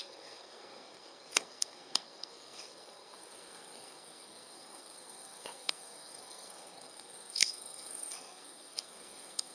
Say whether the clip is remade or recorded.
remade